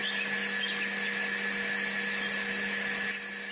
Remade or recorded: recorded